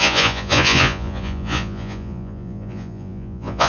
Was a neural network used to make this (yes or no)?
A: yes